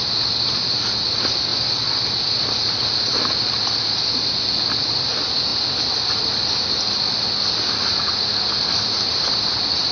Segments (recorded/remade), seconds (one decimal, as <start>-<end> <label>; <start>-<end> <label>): 0.0-9.9 recorded